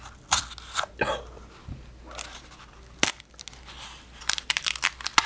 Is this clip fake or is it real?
real